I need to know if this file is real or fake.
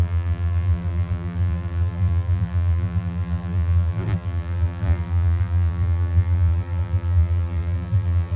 fake